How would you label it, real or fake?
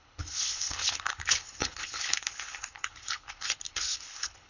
fake